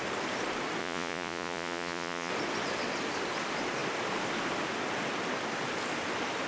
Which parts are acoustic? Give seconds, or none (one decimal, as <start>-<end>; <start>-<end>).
0.0-0.8; 2.3-6.5